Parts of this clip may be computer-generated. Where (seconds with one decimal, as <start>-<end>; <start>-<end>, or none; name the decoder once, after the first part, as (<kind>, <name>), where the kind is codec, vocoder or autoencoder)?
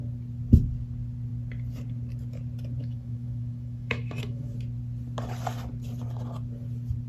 2.8-4.5 (autoencoder, DAC-VAE)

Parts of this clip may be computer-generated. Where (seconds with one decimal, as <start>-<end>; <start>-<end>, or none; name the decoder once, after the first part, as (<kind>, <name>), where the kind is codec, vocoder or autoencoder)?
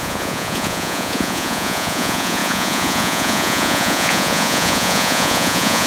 0.0-5.9 (vocoder, Vocos)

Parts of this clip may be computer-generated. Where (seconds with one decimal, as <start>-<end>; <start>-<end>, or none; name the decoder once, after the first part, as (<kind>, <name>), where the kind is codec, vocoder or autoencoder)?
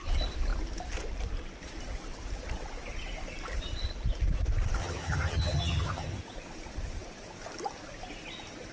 4.8-6.2 (vocoder, HiFi-GAN)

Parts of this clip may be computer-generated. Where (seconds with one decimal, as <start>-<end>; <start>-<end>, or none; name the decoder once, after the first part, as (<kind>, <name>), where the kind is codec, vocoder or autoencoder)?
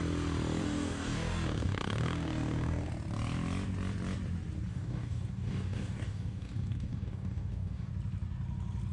0.6-2.9 (codec, DAC); 4.7-7.9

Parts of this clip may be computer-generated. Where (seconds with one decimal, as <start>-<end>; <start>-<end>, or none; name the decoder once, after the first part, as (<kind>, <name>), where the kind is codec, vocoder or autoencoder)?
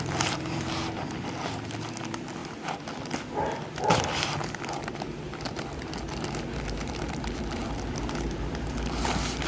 none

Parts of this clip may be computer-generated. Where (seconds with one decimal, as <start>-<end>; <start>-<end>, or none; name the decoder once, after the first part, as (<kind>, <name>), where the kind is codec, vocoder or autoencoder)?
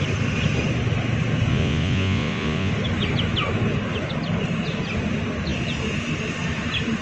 1.5-2.7 (vocoder, Vocos)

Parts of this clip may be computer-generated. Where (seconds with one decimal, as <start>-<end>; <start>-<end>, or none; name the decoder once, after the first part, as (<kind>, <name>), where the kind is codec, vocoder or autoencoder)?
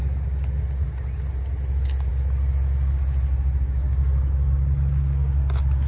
none